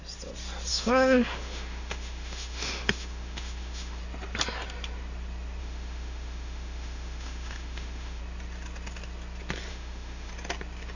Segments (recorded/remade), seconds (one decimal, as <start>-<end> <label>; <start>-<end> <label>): 0.0-0.7 recorded; 0.7-4.0 remade; 4.0-5.6 recorded; 5.6-8.2 remade; 8.2-9.7 recorded; 9.7-10.3 remade; 10.3-11.0 recorded